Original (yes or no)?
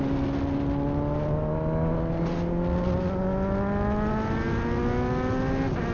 yes